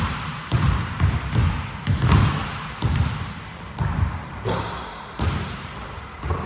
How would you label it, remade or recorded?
remade